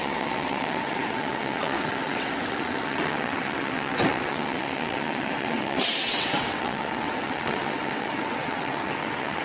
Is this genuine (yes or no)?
no